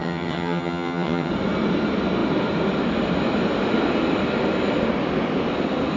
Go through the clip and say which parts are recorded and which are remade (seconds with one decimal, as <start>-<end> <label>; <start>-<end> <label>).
0.0-1.3 remade; 1.3-6.0 recorded